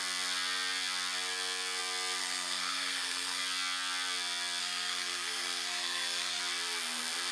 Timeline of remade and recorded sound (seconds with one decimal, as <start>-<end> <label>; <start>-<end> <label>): 0.0-2.2 recorded; 2.2-3.4 remade; 3.4-4.6 recorded; 4.6-6.4 remade; 6.4-7.3 recorded